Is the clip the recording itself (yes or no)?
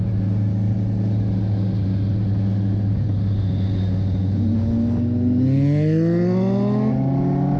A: yes